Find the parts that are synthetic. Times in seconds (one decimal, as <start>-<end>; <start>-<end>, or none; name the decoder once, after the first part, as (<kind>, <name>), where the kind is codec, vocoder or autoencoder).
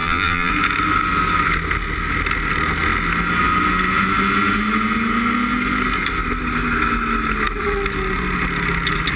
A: 0.0-0.5 (vocoder, BigVGAN v2)